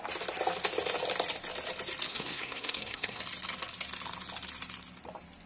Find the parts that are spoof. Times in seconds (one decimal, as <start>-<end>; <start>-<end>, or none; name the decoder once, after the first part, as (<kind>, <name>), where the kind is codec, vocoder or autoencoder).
2.1-3.2 (codec, SNAC)